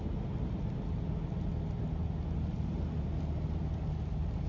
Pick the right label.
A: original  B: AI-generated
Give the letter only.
A